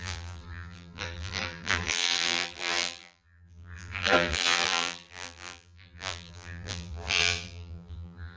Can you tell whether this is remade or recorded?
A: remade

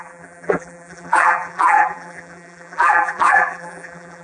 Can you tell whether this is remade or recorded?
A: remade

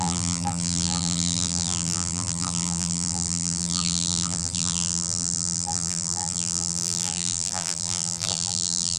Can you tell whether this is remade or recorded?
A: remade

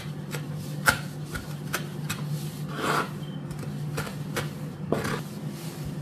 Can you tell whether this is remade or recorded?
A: recorded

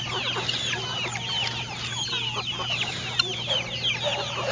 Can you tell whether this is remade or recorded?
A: recorded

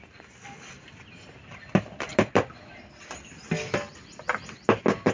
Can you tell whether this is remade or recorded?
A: recorded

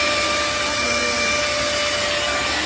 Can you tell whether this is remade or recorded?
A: recorded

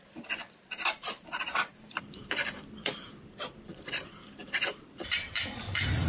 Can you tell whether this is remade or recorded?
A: remade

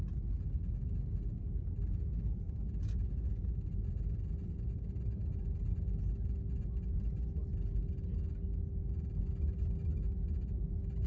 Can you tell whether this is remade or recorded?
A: recorded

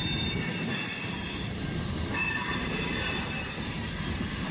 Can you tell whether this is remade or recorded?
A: remade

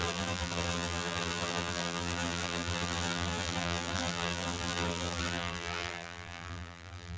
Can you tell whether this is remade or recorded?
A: remade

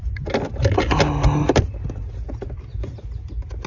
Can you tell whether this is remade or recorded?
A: recorded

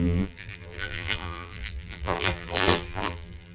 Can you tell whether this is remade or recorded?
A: remade